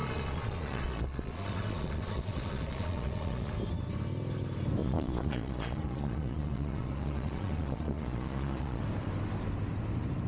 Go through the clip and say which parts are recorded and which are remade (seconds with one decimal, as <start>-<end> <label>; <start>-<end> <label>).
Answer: 0.0-3.5 remade; 3.5-4.8 recorded; 4.8-8.8 remade; 8.8-10.3 recorded